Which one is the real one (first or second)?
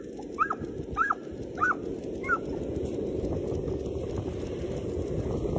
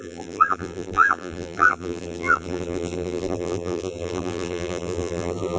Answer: first